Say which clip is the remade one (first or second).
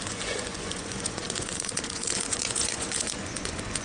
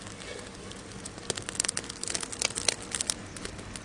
first